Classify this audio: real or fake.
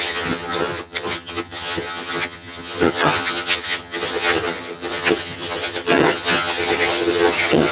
fake